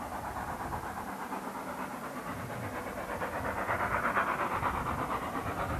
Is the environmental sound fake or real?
real